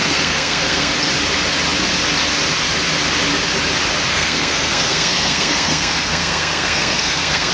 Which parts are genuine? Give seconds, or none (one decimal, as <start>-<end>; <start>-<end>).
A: 0.9-4.1